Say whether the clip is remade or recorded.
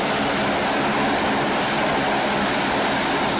recorded